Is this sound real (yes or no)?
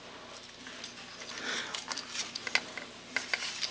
yes